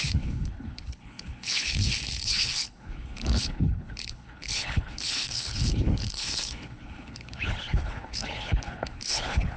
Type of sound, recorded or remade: remade